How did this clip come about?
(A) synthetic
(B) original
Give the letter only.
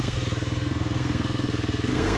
A